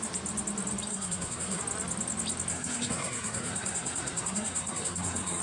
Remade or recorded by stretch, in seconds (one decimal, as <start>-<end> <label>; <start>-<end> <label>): 0.0-0.9 recorded; 0.9-1.6 remade; 1.6-2.5 recorded; 2.5-5.4 remade